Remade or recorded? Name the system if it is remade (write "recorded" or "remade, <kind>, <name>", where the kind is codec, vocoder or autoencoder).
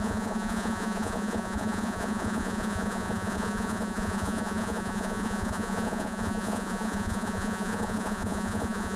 remade, vocoder, Vocos